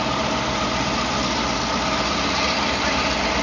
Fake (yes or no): no